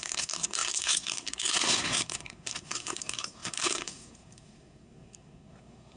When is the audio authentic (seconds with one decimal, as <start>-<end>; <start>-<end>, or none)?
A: none